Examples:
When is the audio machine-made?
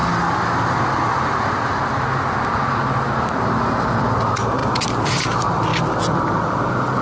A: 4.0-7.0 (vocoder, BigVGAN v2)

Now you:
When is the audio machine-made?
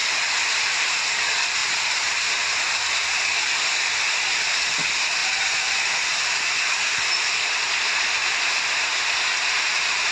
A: 1.6-2.3 (vocoder, BigVGAN v2); 5.2-6.6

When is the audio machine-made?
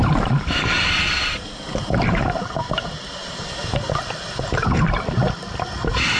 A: 0.0-3.7 (vocoder, BigVGAN v2)